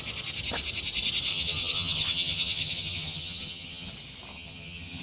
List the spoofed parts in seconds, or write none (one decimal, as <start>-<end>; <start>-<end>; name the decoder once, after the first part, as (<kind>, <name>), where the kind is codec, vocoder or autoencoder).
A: 1.3-3.9 (vocoder, HiFi-GAN); 4.3-5.0